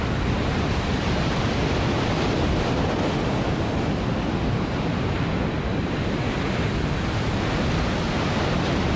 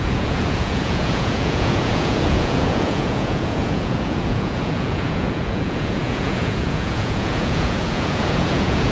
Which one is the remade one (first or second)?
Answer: second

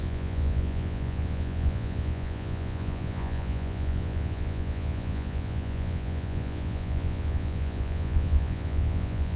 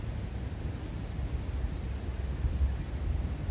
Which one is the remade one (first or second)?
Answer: first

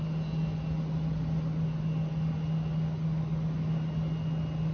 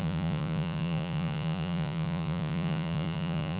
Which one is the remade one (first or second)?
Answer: second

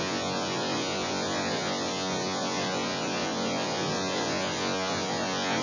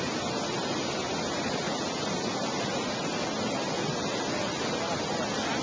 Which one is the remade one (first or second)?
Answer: first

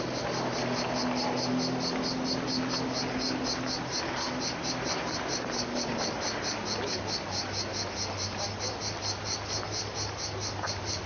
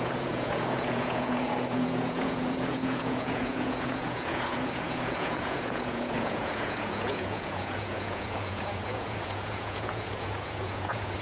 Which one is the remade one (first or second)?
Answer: second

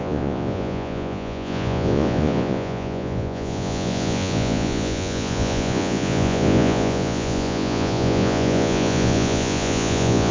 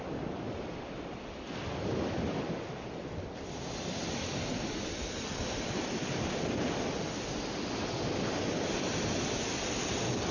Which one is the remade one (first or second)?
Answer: first